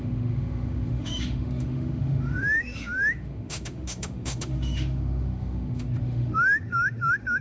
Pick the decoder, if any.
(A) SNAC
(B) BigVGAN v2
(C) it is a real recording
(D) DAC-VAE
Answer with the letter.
D